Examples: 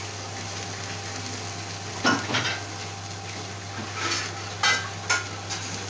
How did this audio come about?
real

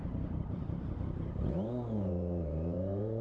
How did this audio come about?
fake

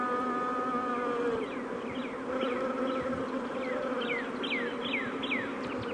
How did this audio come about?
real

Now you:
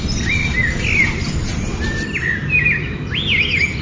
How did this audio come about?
real